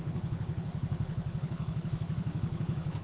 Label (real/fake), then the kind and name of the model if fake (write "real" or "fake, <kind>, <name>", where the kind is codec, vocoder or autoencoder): fake, codec, HILCodec